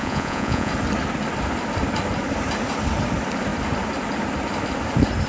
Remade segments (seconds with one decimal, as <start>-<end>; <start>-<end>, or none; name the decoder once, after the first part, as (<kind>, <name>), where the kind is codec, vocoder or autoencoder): 0.0-0.7 (vocoder, Vocos)